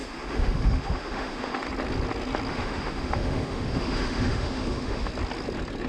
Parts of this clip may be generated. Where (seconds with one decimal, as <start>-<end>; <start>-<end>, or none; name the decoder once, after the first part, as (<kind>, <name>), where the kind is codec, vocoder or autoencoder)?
0.0-1.7 (autoencoder, DAC-VAE); 2.5-5.1